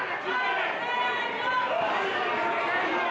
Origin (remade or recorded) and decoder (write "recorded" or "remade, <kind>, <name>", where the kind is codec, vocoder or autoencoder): recorded